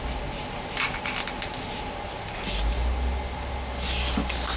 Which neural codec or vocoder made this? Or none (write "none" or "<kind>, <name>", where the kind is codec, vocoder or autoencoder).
none